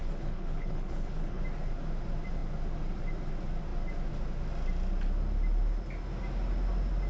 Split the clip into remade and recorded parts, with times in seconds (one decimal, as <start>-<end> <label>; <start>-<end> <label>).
0.0-1.4 remade; 1.4-7.1 recorded